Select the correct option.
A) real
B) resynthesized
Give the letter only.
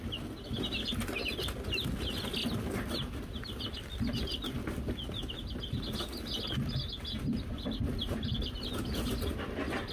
A